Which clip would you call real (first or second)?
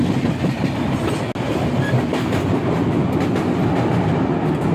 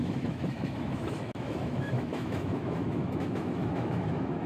first